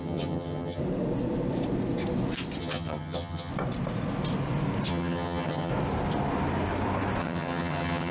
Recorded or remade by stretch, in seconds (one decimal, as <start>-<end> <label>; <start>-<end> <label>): 0.0-0.8 remade; 0.8-2.6 recorded; 2.6-3.5 remade; 3.5-4.9 recorded; 4.9-5.7 remade; 5.7-7.2 recorded; 7.2-8.1 remade